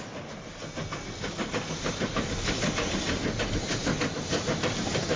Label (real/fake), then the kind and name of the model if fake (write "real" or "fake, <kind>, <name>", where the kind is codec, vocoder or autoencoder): real